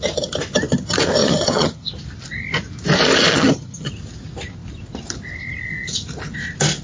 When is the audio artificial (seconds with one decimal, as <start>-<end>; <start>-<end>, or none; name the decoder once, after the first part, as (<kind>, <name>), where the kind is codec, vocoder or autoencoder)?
1.2-1.9 (vocoder, HiFi-GAN); 3.3-3.9